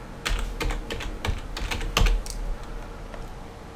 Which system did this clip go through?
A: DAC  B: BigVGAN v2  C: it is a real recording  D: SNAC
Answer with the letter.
C